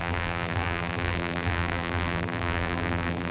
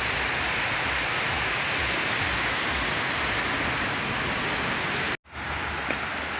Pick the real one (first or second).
second